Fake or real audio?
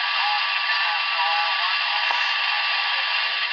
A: real